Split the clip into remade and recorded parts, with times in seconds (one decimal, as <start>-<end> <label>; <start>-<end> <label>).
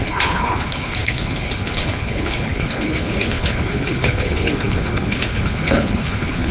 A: 0.0-6.5 remade